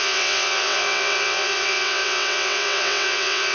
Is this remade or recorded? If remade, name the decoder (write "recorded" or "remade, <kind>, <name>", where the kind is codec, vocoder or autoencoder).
remade, vocoder, WaveNeXt